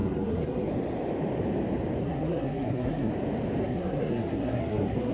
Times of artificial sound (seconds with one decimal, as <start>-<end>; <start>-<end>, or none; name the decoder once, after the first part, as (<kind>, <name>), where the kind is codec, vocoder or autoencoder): 0.0-0.7 (codec, SNAC); 2.0-3.1; 3.6-5.1